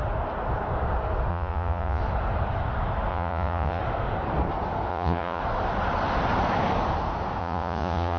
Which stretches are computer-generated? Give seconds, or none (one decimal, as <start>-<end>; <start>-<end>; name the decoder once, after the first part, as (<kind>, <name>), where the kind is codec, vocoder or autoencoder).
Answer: 1.3-2.0 (vocoder, Vocos); 3.1-3.8; 4.9-5.4; 7.4-8.2